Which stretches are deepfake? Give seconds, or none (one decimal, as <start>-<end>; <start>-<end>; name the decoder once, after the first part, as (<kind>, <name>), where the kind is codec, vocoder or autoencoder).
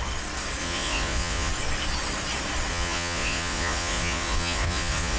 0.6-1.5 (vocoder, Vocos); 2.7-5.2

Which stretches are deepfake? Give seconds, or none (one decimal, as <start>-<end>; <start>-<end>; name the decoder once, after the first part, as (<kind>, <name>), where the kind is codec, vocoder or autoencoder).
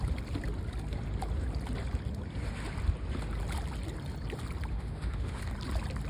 4.7-5.4 (autoencoder, DAC-VAE)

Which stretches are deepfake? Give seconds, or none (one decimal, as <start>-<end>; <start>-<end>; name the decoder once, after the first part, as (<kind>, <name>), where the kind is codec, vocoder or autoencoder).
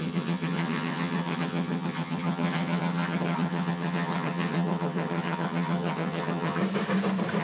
0.0-6.6 (vocoder, HiFi-GAN)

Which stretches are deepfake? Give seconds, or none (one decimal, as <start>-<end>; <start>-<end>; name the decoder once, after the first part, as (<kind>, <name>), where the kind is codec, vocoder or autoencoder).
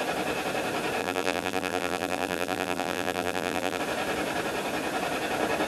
1.0-3.8 (vocoder, BigVGAN v2)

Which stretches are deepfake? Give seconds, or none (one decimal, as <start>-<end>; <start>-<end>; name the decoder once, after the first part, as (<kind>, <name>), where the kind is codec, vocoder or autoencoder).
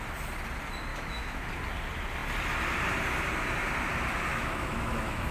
0.9-1.5 (autoencoder, DAC-VAE); 4.3-5.3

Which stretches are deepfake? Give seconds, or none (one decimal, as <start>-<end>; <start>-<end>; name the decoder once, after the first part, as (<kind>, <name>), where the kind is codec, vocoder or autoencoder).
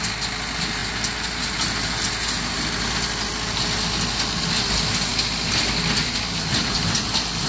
none